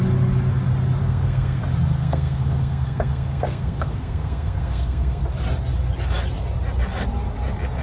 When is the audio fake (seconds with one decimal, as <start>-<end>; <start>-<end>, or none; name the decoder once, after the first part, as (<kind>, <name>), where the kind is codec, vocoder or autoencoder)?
1.0-1.6 (codec, SNAC); 2.0-5.2